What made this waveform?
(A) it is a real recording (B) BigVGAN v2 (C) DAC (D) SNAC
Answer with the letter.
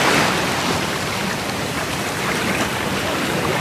B